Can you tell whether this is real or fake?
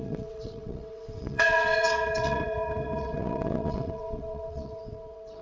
fake